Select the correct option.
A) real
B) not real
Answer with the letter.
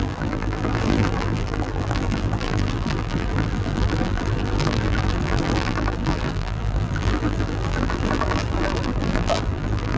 B